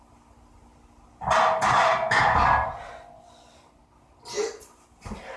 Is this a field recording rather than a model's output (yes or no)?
yes